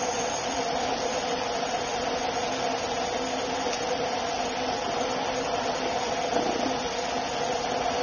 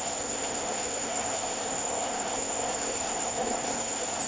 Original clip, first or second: first